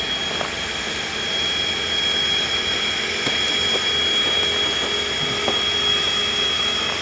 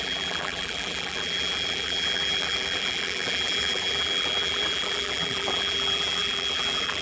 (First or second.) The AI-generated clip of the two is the second